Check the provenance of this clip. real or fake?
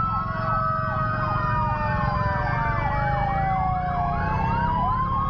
real